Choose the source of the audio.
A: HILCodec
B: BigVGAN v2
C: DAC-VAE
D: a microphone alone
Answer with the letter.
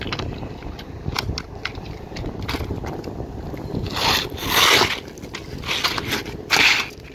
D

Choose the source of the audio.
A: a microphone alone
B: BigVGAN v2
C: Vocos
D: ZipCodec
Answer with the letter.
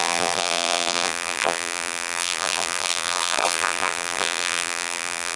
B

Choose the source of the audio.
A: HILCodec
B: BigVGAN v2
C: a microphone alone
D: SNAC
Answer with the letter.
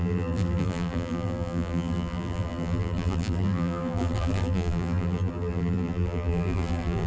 B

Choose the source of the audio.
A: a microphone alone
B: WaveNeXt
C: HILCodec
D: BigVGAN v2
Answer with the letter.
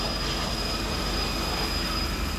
A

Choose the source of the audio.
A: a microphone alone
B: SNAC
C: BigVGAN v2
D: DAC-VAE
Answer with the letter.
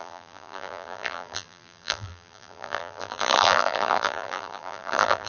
C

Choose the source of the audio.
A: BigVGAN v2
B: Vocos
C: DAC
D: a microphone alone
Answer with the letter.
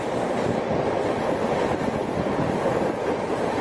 D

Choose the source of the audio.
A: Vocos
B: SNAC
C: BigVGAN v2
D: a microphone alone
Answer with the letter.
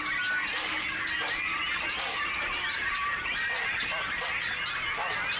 D